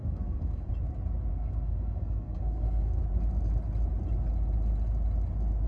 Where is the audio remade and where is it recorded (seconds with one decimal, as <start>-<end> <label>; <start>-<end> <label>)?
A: 0.0-0.7 remade; 0.7-1.3 recorded; 1.3-3.0 remade; 3.0-5.7 recorded